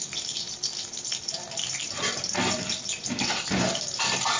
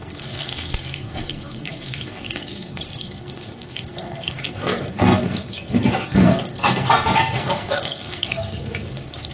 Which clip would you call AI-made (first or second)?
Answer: second